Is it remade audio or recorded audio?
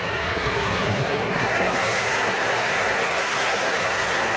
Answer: remade